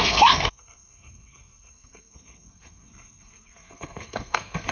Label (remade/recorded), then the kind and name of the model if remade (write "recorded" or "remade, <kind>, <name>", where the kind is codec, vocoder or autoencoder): remade, codec, SNAC